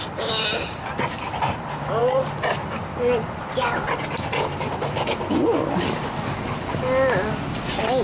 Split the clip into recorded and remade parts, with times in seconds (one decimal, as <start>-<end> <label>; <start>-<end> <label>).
0.0-2.0 recorded; 2.0-4.6 remade; 4.6-8.0 recorded